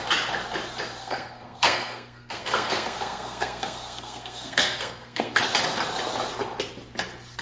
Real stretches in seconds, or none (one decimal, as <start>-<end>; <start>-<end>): 0.0-1.0; 5.4-7.4

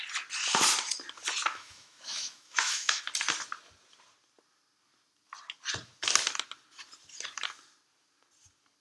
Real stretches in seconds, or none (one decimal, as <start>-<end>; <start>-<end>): 0.0-1.4; 3.0-8.8

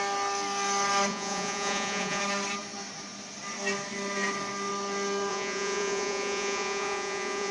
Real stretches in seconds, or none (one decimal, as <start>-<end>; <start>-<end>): 0.0-1.1; 2.2-5.3

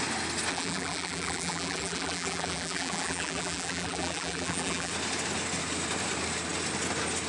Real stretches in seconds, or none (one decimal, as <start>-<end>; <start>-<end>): 0.0-0.5; 4.9-7.3

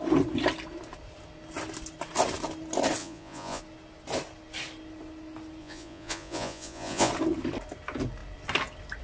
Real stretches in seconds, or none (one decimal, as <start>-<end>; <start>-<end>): 0.0-3.0; 3.6-5.6; 7.1-9.0

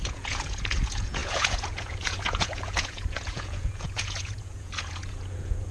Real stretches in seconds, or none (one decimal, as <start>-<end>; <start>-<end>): none